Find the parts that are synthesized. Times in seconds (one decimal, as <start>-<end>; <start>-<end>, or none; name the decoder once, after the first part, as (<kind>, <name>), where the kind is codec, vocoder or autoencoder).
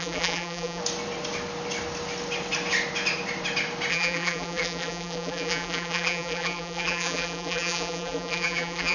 0.0-0.8 (vocoder, BigVGAN v2); 3.9-8.9